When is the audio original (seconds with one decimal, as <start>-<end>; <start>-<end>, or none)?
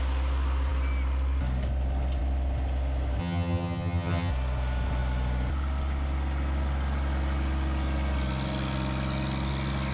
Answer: 0.0-3.2; 4.3-9.9